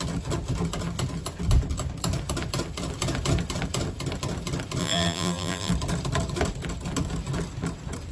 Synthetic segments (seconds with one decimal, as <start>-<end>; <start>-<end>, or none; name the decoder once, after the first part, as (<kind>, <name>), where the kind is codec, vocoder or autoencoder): 4.8-5.7 (vocoder, BigVGAN v2)

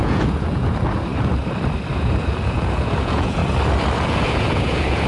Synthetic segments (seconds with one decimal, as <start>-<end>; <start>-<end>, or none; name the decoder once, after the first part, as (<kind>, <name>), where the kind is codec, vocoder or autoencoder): 0.0-1.1 (vocoder, Vocos); 2.0-3.4; 4.0-5.1